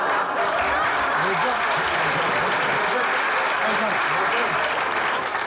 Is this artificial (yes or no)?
no